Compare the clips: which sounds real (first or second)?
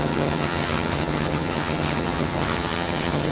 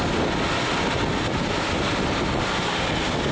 second